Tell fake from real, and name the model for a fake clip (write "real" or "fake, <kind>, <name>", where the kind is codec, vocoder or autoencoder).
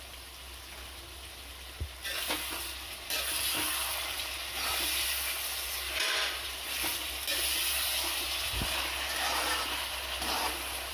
real